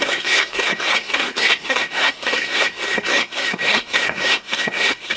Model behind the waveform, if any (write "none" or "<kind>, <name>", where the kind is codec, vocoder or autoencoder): codec, SNAC